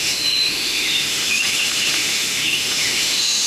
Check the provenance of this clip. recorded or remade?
remade